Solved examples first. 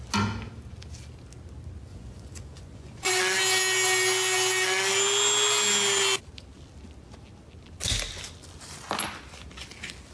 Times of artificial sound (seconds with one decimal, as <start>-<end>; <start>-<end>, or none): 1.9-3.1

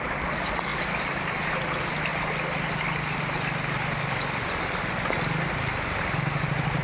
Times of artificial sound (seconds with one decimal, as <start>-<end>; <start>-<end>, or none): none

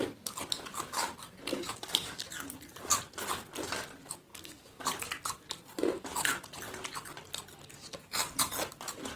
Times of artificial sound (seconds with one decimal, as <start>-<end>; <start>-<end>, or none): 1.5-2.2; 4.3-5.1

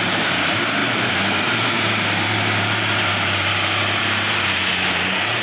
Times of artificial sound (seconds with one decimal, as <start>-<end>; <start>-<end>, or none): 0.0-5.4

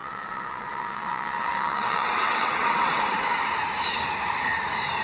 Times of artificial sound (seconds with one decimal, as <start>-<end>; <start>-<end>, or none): 0.0-3.0

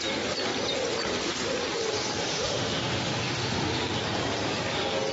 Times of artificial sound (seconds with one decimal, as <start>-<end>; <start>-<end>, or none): 2.2-3.8